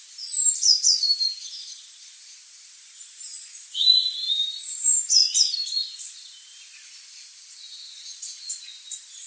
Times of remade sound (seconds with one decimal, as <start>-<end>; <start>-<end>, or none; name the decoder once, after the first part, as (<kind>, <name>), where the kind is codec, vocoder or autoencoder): 0.0-5.2 (vocoder, BigVGAN v2); 5.9-9.3

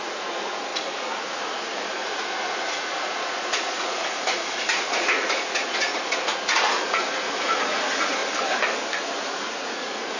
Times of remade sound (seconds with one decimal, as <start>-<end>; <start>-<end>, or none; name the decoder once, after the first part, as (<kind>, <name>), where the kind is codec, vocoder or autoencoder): 0.0-8.2 (vocoder, Vocos); 9.0-10.2